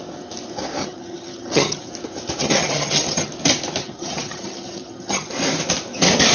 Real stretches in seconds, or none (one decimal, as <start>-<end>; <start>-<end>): 0.0-0.8; 1.9-2.4; 3.3-3.8; 5.3-6.3